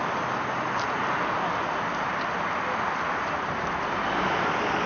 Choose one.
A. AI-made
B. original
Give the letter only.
B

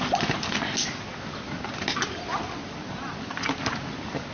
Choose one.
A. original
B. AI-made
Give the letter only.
A